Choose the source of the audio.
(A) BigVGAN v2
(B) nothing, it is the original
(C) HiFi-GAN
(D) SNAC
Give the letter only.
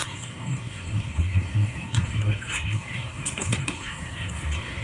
D